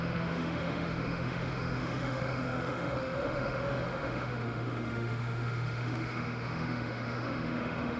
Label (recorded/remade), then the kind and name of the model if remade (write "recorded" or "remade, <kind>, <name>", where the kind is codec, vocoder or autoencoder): remade, autoencoder, DAC-VAE